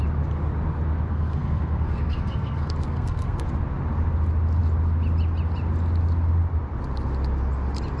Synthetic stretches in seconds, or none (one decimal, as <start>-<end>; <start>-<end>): 1.1-3.5